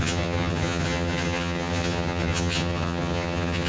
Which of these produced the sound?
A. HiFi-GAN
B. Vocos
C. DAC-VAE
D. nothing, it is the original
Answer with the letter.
A